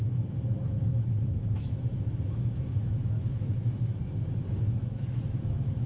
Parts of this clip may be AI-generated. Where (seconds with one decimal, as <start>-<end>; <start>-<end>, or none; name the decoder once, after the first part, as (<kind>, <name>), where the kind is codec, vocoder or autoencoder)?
0.0-4.0 (autoencoder, DAC-VAE); 4.8-5.9